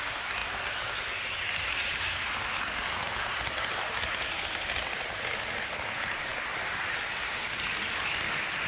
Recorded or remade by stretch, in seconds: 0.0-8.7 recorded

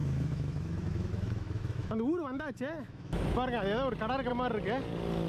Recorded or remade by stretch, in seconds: 0.0-3.2 remade; 3.2-5.3 recorded

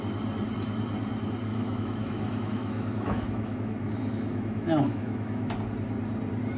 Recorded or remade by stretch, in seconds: 0.0-1.5 recorded; 1.5-5.5 remade; 5.5-6.6 recorded

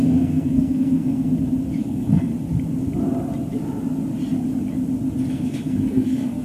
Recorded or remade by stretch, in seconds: 0.0-1.3 remade; 1.3-1.8 recorded; 1.8-2.3 remade; 2.3-5.3 recorded; 5.3-6.4 remade

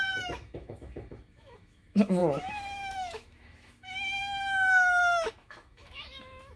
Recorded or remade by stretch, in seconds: 0.0-6.6 remade

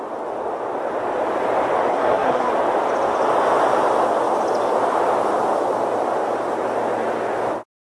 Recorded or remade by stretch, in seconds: 0.0-1.9 recorded; 1.9-2.5 remade; 2.5-7.8 recorded

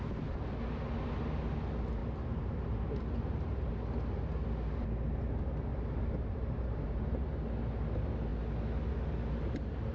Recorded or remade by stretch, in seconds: 0.0-2.0 recorded; 2.0-3.7 remade; 3.7-5.7 recorded; 5.7-7.2 remade; 7.2-9.9 recorded

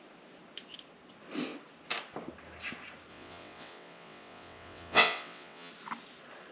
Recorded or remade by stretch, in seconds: 0.0-3.1 recorded; 3.1-5.7 remade; 5.7-6.5 recorded